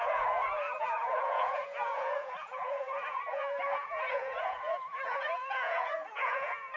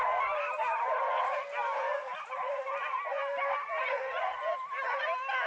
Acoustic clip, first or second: second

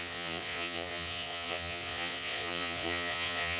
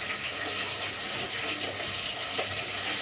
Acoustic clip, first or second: second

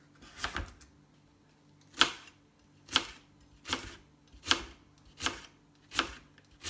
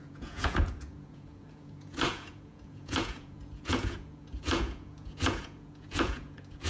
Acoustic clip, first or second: first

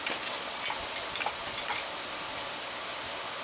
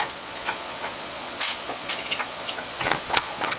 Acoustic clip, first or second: first